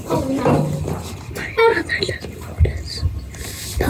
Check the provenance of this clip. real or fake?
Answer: real